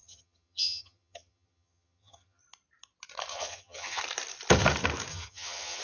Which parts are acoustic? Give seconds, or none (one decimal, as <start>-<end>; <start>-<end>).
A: 2.4-3.3; 4.0-5.1